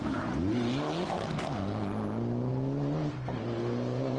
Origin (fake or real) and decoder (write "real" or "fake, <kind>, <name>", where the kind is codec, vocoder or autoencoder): real